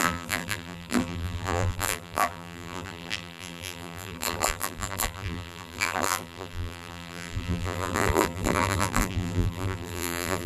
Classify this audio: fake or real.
fake